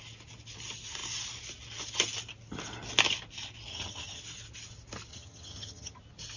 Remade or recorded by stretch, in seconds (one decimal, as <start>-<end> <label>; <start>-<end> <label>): 0.0-3.7 recorded; 3.7-4.2 remade; 4.2-5.1 recorded; 5.1-6.0 remade; 6.0-6.4 recorded